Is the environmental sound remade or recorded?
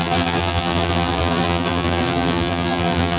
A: remade